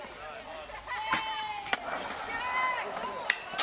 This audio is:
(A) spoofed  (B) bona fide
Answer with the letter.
B